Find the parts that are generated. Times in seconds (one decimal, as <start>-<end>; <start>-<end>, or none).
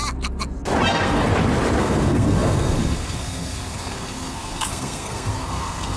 0.9-1.3; 1.8-6.0